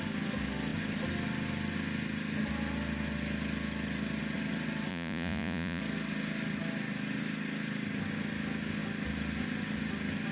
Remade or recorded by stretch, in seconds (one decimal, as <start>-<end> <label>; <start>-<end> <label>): 0.0-4.9 recorded; 4.9-5.8 remade; 5.8-10.3 recorded

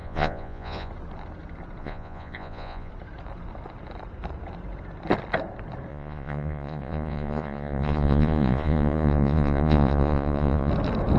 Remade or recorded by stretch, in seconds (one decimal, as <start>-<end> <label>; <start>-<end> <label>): 0.0-0.9 remade; 0.9-1.8 recorded; 1.8-2.9 remade; 2.9-5.9 recorded; 5.9-10.7 remade; 10.7-11.2 recorded